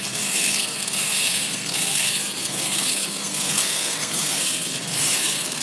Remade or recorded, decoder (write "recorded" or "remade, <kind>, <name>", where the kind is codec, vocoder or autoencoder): remade, codec, SNAC